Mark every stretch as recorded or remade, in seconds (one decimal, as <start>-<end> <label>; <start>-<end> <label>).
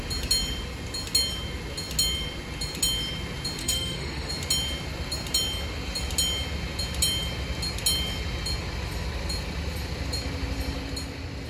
0.0-3.6 recorded; 3.6-4.3 remade; 4.3-11.5 recorded